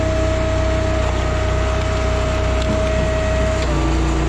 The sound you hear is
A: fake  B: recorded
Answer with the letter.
B